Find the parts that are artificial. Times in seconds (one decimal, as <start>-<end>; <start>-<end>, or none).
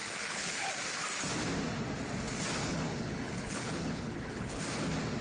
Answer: 0.0-0.7; 2.6-4.6